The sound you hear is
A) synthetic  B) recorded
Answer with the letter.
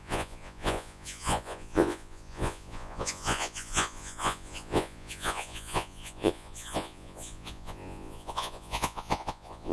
A